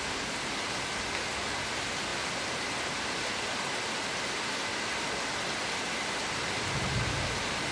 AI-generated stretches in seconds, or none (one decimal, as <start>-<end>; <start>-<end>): none